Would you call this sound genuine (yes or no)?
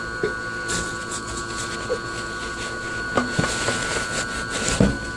yes